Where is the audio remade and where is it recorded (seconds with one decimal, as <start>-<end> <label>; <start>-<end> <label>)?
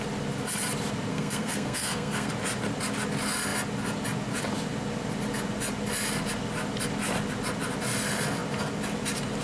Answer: 0.0-1.1 recorded; 1.1-2.3 remade; 2.3-9.4 recorded